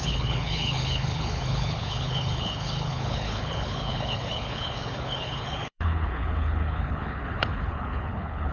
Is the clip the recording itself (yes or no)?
no